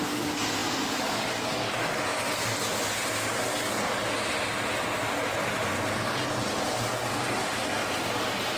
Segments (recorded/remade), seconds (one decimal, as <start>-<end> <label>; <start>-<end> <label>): 0.0-8.6 recorded